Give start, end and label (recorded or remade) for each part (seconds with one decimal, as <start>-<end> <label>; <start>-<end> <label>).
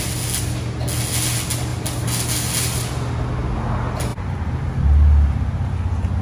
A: 0.0-6.2 recorded